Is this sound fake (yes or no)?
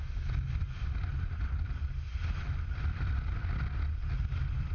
no